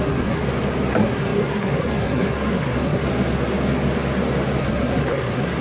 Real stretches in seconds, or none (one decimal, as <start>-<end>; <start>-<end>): 0.4-0.9; 3.1-4.6